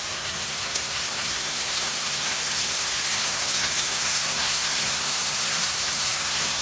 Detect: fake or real fake